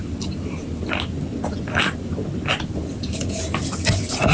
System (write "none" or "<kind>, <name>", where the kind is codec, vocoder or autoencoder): none